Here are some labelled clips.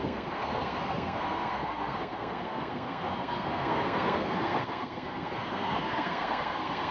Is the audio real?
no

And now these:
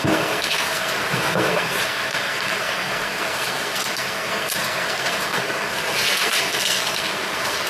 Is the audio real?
no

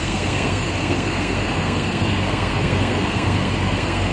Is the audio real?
no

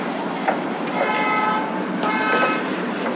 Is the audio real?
yes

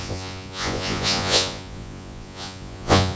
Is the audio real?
no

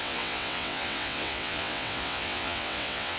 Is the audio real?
no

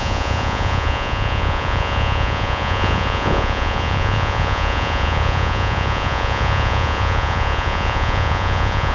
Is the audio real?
no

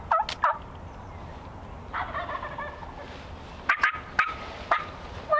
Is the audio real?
yes